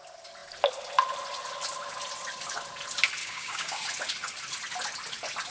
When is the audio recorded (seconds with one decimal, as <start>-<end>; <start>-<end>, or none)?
0.0-3.2; 3.9-5.5